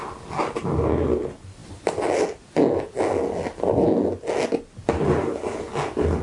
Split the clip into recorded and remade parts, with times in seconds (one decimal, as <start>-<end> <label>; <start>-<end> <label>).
0.0-6.2 recorded

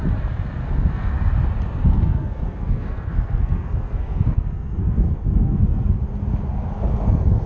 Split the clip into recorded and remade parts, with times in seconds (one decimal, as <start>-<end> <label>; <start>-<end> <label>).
0.0-0.6 recorded; 0.6-1.1 remade; 1.1-1.9 recorded; 1.9-6.0 remade; 6.0-7.5 recorded

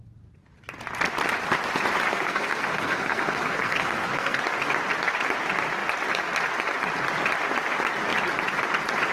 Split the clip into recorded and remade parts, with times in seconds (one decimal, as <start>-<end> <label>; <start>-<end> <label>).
0.0-2.1 recorded; 2.1-4.4 remade; 4.4-9.1 recorded

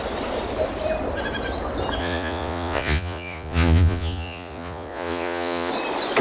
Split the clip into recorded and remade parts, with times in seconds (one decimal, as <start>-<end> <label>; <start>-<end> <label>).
0.0-2.0 recorded; 2.0-5.7 remade; 5.7-6.2 recorded

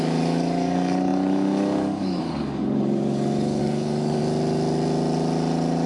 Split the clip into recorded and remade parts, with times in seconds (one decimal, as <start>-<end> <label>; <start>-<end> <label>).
0.0-4.2 remade; 4.2-5.9 recorded

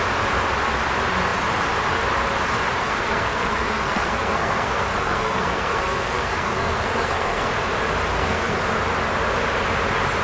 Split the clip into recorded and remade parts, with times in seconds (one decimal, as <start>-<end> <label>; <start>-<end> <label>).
0.0-2.8 recorded; 2.8-7.5 remade; 7.5-8.1 recorded; 8.1-8.6 remade; 8.6-10.2 recorded

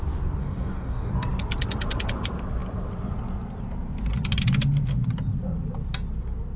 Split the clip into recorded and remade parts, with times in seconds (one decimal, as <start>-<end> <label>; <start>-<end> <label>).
0.0-0.4 recorded; 0.4-1.1 remade; 1.1-6.6 recorded

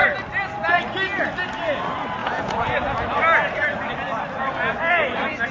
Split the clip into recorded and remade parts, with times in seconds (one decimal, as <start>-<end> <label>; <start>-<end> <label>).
0.0-2.2 recorded; 2.2-3.1 remade; 3.1-5.5 recorded